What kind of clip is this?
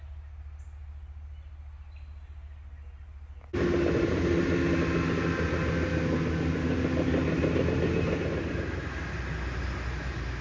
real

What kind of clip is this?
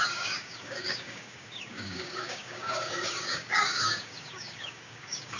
fake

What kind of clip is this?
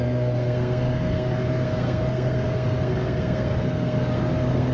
fake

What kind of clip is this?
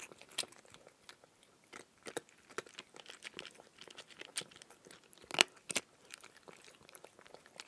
real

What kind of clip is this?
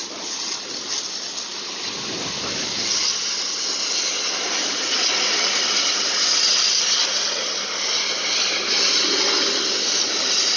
real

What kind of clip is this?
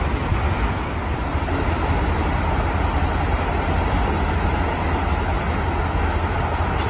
real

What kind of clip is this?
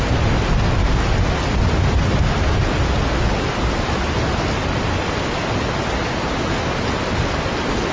real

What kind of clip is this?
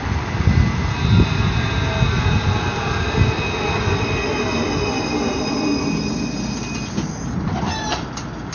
real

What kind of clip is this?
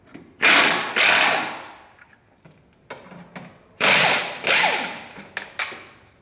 real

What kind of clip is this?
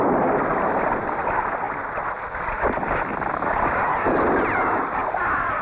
fake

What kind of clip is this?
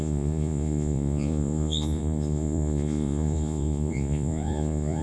fake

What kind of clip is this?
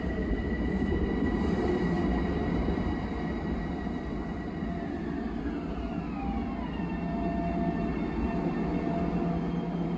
real